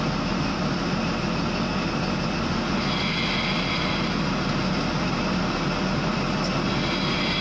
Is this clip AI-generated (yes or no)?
no